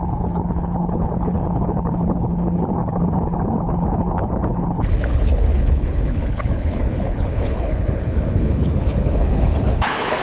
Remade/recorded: remade